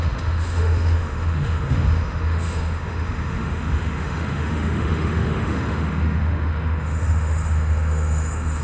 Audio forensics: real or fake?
fake